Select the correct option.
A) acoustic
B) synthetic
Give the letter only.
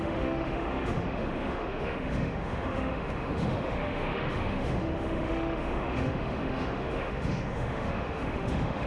B